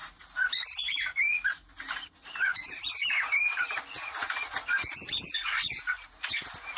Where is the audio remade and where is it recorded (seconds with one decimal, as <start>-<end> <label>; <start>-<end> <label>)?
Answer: 0.0-6.8 recorded